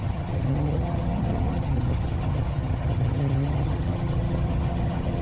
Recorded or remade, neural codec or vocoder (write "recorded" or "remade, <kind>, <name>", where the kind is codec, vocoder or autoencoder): remade, vocoder, HiFi-GAN